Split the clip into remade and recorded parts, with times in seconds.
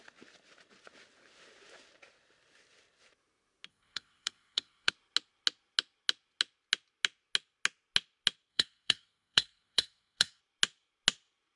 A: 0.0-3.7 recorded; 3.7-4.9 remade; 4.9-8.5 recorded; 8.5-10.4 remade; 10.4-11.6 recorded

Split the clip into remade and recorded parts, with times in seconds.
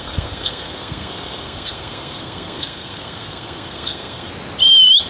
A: 0.0-4.3 remade; 4.3-5.1 recorded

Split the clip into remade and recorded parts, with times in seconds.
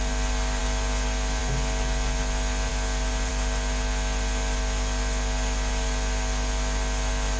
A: 0.0-7.4 recorded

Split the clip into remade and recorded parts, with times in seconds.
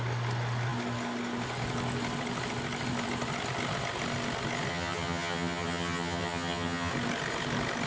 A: 0.0-4.7 recorded; 4.7-6.9 remade; 6.9-7.9 recorded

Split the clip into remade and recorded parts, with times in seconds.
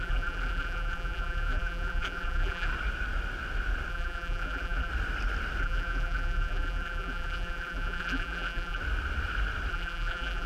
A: 0.0-2.7 remade; 2.7-3.9 recorded; 3.9-4.9 remade; 4.9-5.6 recorded; 5.6-8.8 remade; 8.8-9.7 recorded; 9.7-10.5 remade